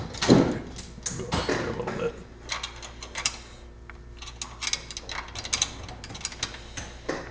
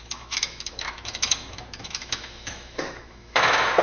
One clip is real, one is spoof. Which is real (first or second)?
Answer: first